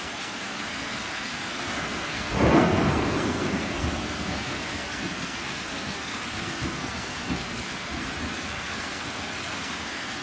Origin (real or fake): fake